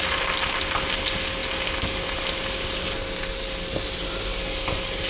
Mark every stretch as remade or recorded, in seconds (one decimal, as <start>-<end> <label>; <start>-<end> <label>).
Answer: 0.0-5.1 recorded